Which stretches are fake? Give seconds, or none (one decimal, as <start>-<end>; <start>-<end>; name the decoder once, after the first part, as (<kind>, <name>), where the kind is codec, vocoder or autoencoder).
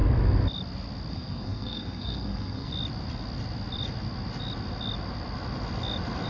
1.1-2.7 (codec, SNAC)